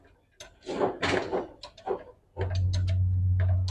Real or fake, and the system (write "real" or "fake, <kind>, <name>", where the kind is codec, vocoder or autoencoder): real